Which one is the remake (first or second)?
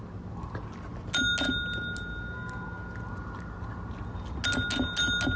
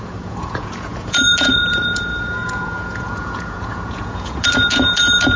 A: second